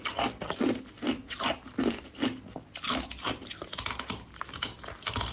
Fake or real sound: real